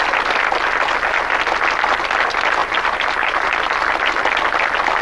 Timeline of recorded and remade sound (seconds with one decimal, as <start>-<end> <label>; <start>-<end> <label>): 0.0-2.6 recorded; 2.6-3.5 remade; 3.5-5.0 recorded